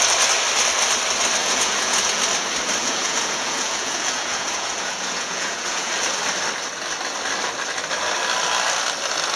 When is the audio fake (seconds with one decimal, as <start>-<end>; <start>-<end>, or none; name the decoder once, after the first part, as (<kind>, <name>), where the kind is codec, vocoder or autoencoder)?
1.4-2.2 (vocoder, Vocos); 2.8-5.9